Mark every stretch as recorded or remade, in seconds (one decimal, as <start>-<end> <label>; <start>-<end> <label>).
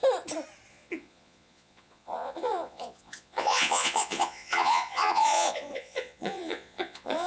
0.0-0.7 recorded; 0.7-7.3 remade